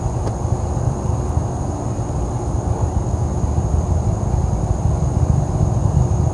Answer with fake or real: real